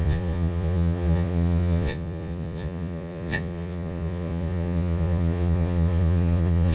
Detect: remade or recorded remade